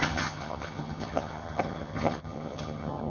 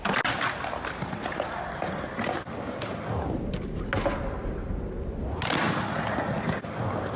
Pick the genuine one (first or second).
second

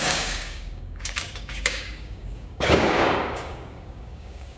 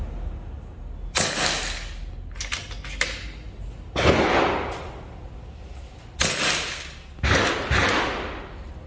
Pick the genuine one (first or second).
second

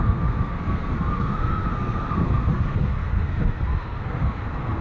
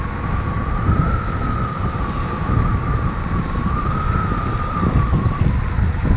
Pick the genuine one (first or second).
second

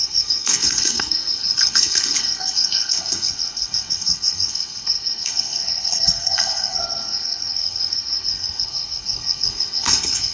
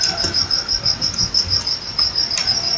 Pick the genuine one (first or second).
second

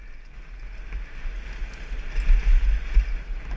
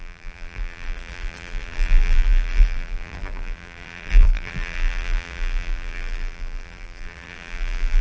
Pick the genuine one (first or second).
first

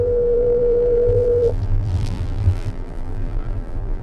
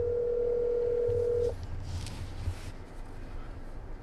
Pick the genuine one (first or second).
second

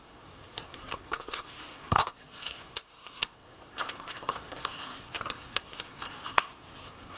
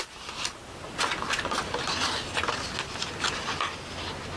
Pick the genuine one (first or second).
second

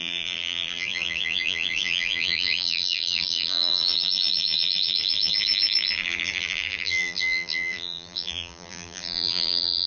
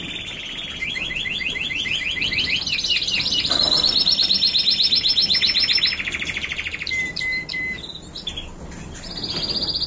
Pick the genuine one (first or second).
second